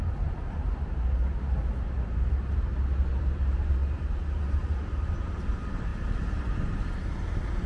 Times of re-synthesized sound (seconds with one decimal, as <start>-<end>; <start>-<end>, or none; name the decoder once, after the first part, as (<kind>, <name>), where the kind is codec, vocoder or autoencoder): 0.0-2.7 (vocoder, BigVGAN v2); 3.2-3.8; 4.4-7.7